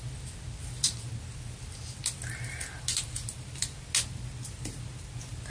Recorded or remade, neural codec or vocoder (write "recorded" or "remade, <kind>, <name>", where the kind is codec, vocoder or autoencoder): recorded